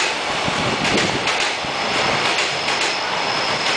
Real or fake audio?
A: real